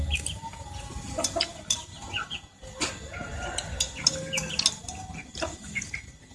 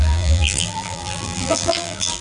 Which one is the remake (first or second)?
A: second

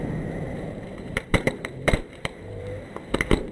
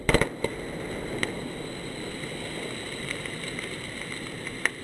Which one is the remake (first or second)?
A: first